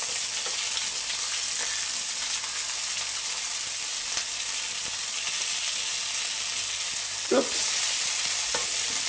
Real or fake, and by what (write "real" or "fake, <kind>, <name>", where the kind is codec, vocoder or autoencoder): real